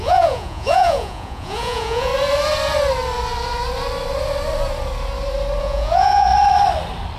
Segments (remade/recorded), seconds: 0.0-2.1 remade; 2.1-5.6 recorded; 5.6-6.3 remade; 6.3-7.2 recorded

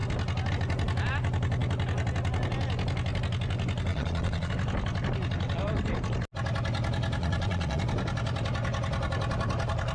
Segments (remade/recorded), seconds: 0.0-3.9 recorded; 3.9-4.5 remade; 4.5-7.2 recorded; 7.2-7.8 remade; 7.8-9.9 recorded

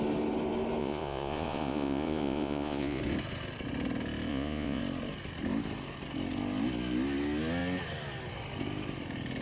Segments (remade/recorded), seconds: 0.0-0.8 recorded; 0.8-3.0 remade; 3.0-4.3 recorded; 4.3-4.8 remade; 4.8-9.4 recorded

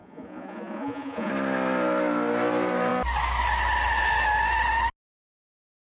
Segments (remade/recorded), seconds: 0.0-1.3 remade; 1.3-5.9 recorded

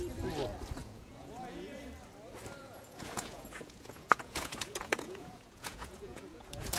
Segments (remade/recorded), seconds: 0.0-0.8 recorded; 0.8-1.7 remade; 1.7-2.6 recorded; 2.6-6.8 remade

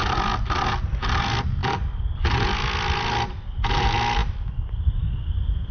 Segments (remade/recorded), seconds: 0.0-5.7 recorded